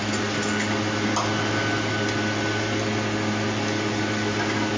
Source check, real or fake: real